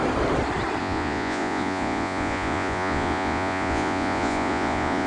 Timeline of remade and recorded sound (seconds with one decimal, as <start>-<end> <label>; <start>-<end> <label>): 0.0-0.8 recorded; 0.8-5.1 remade